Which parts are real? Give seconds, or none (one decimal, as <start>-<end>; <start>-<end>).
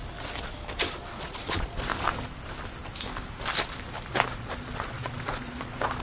0.0-0.9; 1.9-4.3